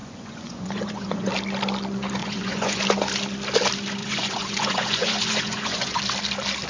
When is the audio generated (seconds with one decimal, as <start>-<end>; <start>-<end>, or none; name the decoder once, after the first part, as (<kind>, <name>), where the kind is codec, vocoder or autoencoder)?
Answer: 0.0-1.3 (vocoder, Vocos); 2.2-2.8; 4.0-6.0